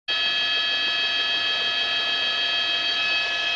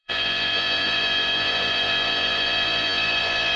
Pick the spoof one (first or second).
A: second